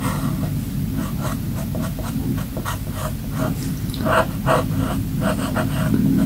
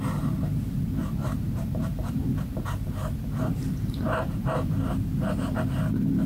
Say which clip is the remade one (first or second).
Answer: second